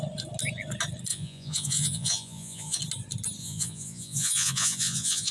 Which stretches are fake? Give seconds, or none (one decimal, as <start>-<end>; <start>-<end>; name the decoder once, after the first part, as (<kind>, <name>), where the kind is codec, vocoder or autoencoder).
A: 1.1-2.8 (vocoder, Vocos); 3.4-5.3